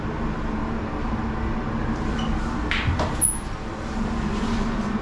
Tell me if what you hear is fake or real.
real